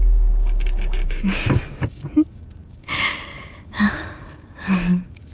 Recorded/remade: remade